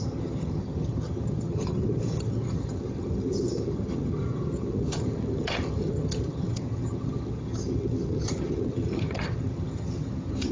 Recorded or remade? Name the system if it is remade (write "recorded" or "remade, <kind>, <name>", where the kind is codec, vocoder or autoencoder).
remade, vocoder, HiFi-GAN